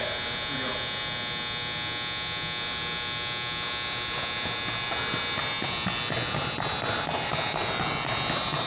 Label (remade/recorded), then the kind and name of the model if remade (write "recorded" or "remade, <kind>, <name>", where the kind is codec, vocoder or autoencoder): recorded